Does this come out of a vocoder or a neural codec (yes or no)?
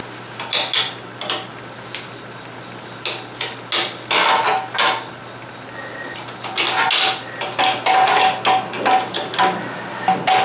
no